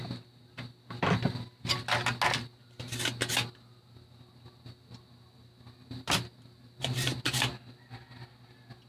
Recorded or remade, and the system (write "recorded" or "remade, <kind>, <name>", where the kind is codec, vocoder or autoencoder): recorded